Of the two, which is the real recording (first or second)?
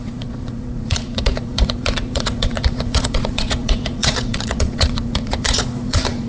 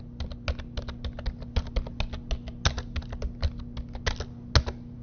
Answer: second